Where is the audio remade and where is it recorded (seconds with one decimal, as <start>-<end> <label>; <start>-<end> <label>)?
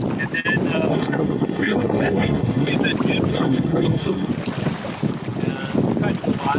0.0-0.9 recorded; 0.9-2.7 remade; 2.7-3.3 recorded; 3.3-4.3 remade; 4.3-6.6 recorded